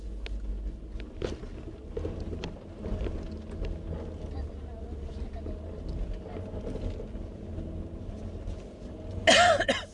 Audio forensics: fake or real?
real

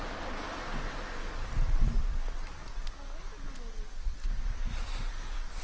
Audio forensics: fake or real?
real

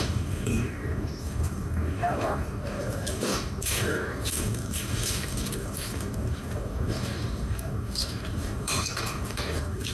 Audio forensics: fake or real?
fake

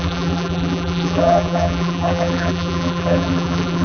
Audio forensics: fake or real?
fake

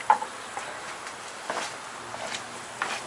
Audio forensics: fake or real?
real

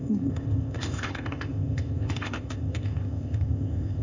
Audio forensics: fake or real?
fake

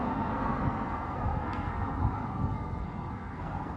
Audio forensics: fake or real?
fake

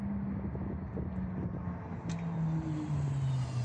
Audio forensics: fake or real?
real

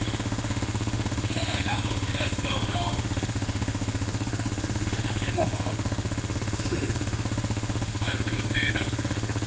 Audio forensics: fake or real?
fake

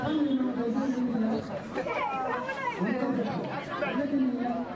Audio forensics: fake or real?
fake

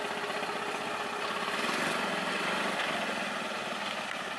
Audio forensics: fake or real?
real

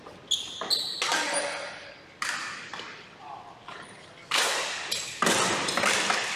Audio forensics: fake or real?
real